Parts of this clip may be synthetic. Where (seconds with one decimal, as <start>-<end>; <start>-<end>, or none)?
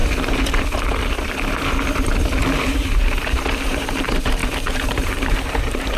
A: 3.0-6.0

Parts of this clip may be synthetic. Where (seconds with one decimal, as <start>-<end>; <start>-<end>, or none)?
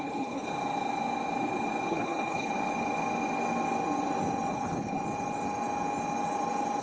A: 0.0-0.5; 1.9-2.5; 4.5-5.0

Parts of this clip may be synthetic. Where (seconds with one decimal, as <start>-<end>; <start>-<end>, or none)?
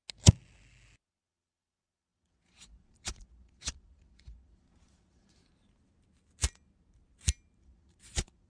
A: 1.1-5.4; 7.6-8.5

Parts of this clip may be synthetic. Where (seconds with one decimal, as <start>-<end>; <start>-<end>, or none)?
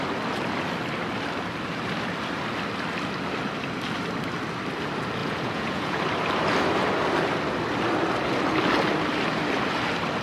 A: 5.2-6.0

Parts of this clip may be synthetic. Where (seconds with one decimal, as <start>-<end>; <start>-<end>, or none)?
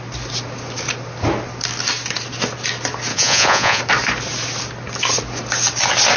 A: 3.1-3.8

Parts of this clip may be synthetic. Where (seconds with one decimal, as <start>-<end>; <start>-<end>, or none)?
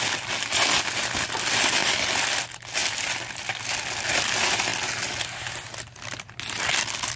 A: 2.8-4.1